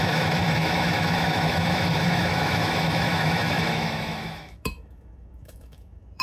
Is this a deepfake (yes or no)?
yes